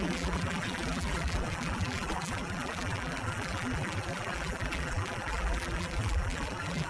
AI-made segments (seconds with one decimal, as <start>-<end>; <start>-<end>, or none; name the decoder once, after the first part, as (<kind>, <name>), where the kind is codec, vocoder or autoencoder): 0.0-6.9 (vocoder, BigVGAN v2)